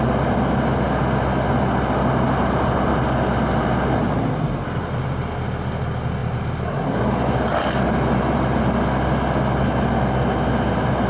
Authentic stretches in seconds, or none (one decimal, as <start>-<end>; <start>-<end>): 0.0-6.2; 6.8-11.1